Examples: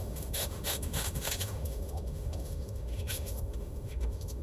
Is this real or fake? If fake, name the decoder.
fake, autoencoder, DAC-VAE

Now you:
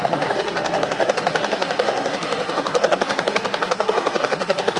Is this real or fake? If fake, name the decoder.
fake, codec, SNAC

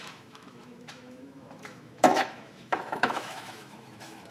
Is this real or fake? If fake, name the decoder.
fake, autoencoder, DAC-VAE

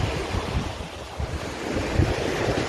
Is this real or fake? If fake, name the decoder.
real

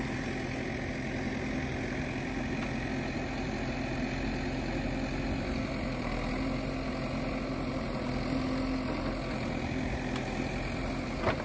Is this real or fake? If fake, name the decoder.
real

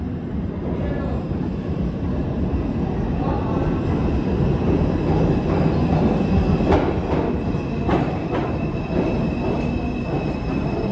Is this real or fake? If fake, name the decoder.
real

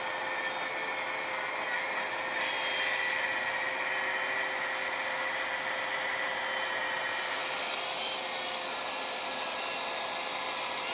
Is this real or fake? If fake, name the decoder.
real